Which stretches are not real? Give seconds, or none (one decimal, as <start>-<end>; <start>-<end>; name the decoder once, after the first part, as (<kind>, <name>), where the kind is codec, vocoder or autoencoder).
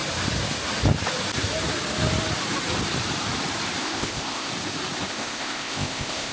3.8-4.5 (codec, ZipCodec); 5.1-6.3